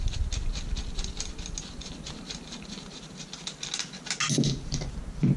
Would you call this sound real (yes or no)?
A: yes